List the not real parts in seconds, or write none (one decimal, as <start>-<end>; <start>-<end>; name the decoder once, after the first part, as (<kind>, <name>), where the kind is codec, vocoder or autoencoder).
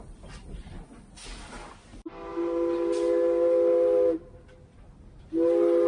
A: none